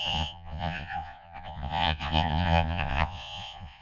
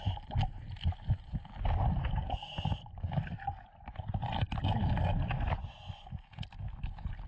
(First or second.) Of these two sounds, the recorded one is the second